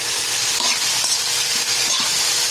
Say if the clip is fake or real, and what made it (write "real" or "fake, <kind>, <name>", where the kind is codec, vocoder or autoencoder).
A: real